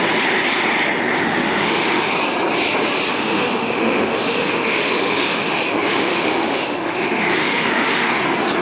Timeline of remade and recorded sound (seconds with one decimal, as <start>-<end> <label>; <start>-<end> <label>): 0.0-1.2 recorded; 1.2-2.1 remade; 2.1-3.1 recorded; 3.1-8.1 remade; 8.1-8.6 recorded

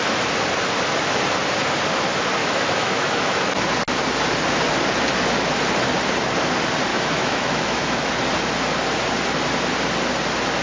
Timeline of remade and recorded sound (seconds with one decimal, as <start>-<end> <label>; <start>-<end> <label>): 0.0-2.4 recorded; 2.4-3.5 remade; 3.5-6.9 recorded; 6.9-8.1 remade; 8.1-10.6 recorded

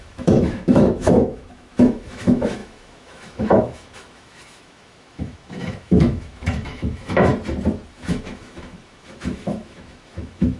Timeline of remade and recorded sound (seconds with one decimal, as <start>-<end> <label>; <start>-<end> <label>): 0.0-7.3 remade; 7.3-7.9 recorded; 7.9-10.6 remade